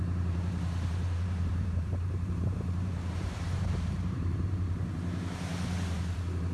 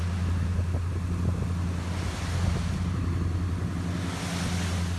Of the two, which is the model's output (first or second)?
first